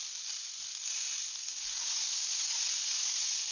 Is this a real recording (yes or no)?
yes